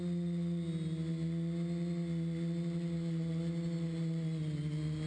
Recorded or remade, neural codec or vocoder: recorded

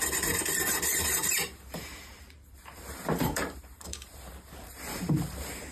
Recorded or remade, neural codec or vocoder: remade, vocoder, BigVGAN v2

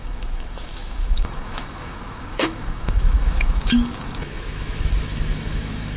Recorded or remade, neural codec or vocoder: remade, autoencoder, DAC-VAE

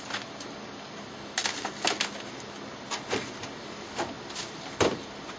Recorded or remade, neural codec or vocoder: recorded